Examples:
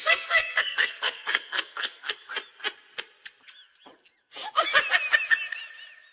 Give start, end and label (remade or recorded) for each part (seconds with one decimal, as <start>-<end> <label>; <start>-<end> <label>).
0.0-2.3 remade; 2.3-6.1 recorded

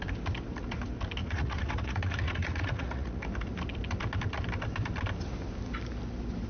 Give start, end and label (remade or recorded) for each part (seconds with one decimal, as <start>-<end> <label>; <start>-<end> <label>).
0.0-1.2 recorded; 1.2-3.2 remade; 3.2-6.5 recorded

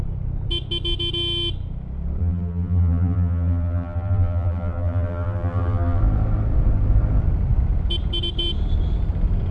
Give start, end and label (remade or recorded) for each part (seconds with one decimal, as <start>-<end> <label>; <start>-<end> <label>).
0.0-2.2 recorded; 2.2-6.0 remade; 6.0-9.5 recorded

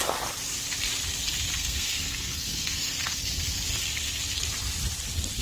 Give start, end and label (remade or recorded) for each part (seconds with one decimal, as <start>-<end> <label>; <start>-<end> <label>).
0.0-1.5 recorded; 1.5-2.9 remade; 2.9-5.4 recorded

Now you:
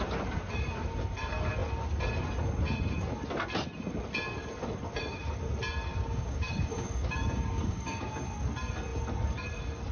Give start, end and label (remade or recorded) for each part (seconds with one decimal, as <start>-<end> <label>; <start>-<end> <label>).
0.0-5.9 recorded; 5.9-8.1 remade; 8.1-9.9 recorded

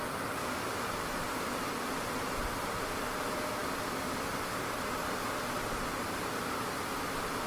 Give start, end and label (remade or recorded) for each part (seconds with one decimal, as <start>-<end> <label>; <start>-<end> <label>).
0.0-7.5 recorded

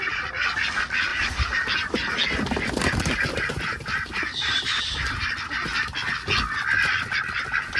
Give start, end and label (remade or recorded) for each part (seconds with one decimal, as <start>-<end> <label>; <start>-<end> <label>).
0.0-1.1 recorded; 1.1-4.8 remade; 4.8-7.8 recorded

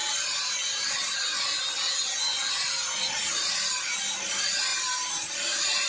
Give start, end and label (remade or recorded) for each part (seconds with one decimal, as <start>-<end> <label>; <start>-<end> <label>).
0.0-4.7 recorded; 4.7-5.9 remade